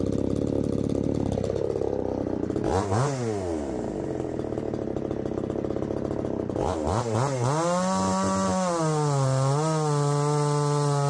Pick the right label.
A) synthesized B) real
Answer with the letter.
B